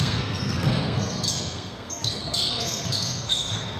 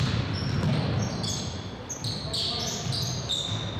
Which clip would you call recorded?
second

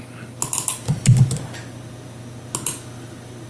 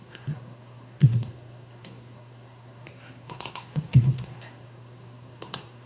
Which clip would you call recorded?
first